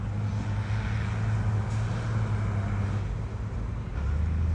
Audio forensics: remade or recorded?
recorded